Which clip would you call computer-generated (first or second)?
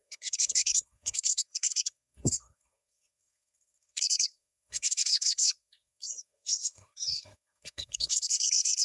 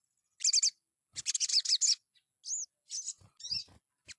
first